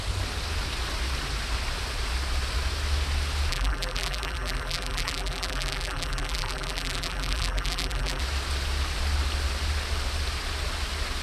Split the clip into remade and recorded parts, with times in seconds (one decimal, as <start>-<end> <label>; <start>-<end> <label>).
0.0-3.5 recorded; 3.5-8.2 remade; 8.2-11.2 recorded